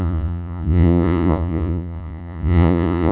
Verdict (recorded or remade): remade